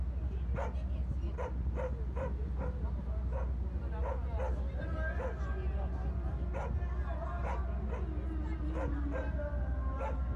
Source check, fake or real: real